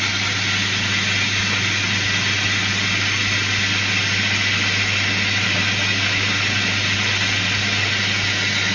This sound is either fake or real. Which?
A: real